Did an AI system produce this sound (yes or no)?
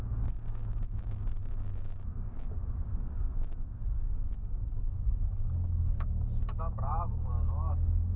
yes